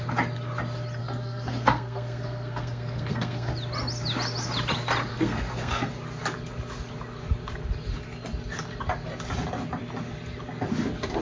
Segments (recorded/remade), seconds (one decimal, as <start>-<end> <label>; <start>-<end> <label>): 0.0-1.0 recorded; 1.0-3.5 remade; 3.5-5.1 recorded; 5.1-5.9 remade; 5.9-11.2 recorded